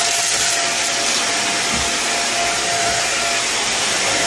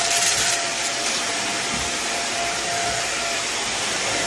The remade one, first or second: second